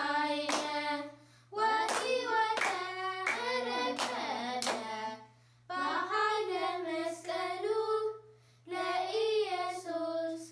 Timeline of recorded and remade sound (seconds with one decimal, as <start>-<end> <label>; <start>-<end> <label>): 0.0-10.5 recorded